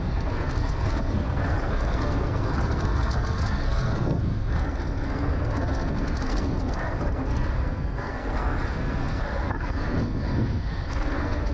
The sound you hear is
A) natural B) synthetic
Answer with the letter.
B